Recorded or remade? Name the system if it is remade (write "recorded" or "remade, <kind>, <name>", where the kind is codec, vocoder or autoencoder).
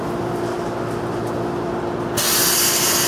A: recorded